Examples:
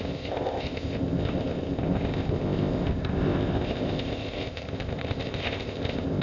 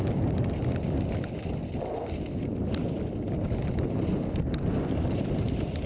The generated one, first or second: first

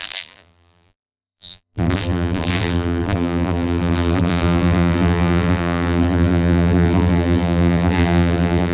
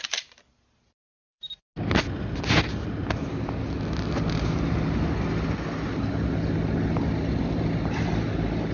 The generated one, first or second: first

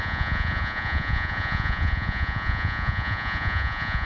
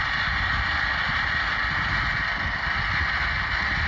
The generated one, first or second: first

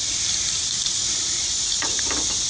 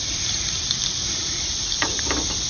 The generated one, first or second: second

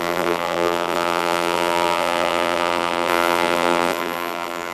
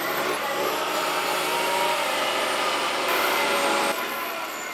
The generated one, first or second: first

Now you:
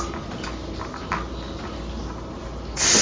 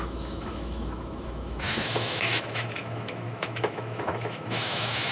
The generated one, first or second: second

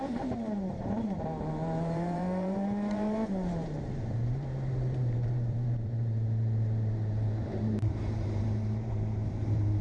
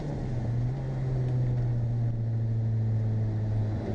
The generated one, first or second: first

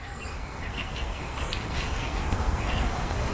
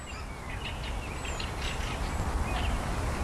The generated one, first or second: first